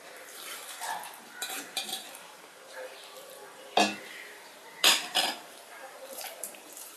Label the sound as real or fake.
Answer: fake